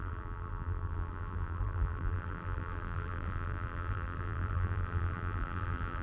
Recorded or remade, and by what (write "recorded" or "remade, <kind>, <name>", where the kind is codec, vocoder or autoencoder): remade, vocoder, BigVGAN v2